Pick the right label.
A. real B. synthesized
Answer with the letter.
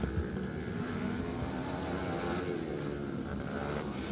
A